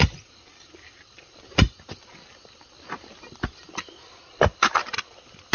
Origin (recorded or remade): recorded